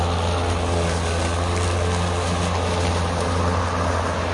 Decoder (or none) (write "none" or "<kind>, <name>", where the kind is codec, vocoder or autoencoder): none